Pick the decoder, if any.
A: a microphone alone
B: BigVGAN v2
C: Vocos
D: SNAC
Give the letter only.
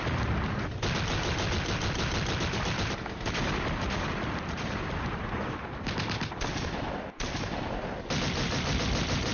B